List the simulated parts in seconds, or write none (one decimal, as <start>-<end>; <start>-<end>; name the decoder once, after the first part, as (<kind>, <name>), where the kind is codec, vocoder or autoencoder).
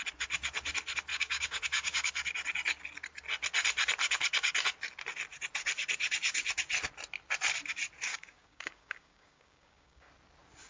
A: 1.1-2.1 (codec, DAC); 8.1-10.1